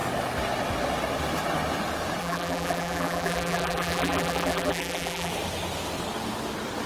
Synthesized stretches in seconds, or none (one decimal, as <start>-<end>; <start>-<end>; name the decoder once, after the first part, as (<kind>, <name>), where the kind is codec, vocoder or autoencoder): 2.2-5.3 (vocoder, BigVGAN v2)